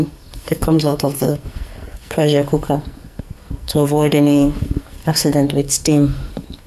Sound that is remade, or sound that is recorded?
remade